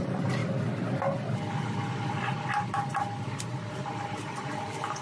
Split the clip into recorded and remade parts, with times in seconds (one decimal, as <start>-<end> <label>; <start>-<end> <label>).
0.0-0.4 remade; 0.4-3.4 recorded; 3.4-5.0 remade